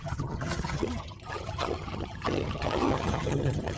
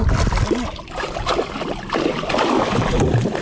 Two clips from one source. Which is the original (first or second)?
second